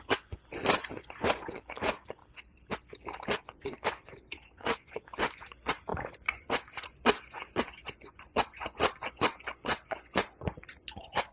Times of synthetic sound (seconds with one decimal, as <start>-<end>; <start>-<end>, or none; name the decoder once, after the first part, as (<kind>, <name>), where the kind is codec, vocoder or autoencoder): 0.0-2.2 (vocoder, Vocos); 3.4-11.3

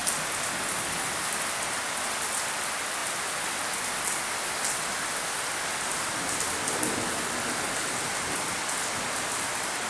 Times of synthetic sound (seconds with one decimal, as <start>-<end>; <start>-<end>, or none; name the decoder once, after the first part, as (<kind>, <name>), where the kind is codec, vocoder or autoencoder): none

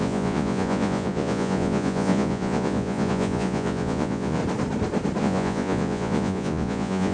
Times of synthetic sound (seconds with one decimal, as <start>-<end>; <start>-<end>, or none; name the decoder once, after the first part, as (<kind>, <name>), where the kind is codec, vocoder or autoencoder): 0.0-4.4 (vocoder, Vocos); 5.2-7.1

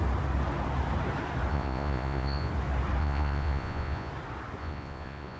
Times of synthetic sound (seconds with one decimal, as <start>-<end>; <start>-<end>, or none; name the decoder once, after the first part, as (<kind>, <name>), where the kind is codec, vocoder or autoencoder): 1.5-2.5 (vocoder, Vocos); 3.0-4.1; 4.6-5.4